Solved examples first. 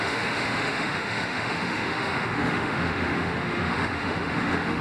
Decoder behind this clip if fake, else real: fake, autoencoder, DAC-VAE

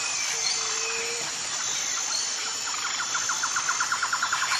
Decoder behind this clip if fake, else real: real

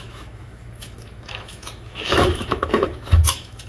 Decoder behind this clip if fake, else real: fake, autoencoder, DAC-VAE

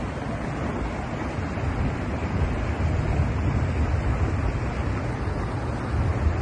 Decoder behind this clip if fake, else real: real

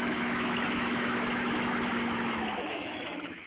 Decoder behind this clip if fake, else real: fake, autoencoder, DAC-VAE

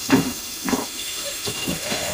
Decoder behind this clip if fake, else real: fake, autoencoder, DAC-VAE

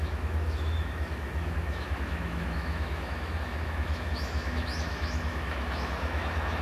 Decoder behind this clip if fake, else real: fake, autoencoder, DAC-VAE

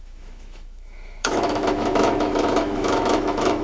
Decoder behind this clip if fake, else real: fake, autoencoder, DAC-VAE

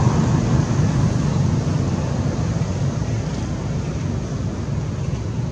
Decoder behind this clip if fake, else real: real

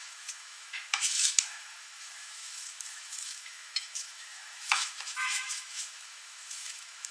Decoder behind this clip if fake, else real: fake, autoencoder, DAC-VAE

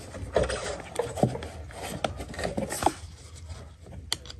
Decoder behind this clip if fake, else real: real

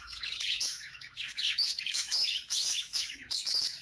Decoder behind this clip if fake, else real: fake, autoencoder, DAC-VAE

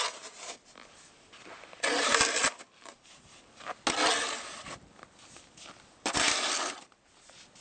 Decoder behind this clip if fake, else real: real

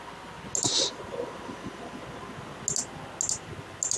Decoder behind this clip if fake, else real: real